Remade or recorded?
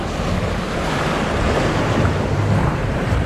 remade